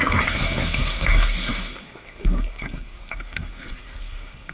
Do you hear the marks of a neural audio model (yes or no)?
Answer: yes